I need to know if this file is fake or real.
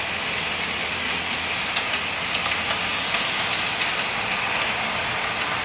real